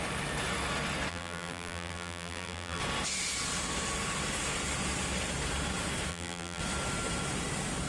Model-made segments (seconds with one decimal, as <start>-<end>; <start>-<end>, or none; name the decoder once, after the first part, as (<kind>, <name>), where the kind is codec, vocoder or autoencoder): 1.1-2.8 (vocoder, BigVGAN v2); 6.1-6.6